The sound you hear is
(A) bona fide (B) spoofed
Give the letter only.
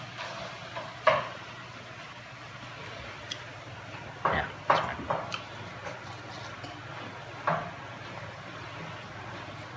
A